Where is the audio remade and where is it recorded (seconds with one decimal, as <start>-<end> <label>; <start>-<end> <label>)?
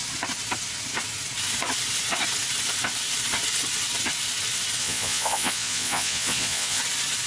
0.0-4.8 recorded; 4.8-6.8 remade; 6.8-7.3 recorded